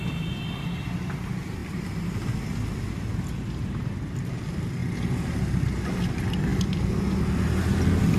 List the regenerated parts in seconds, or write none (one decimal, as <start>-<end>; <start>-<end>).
none